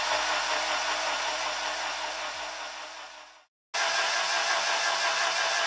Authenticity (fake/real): real